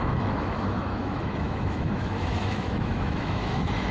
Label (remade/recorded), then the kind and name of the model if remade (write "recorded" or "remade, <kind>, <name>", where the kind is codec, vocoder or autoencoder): remade, autoencoder, DAC-VAE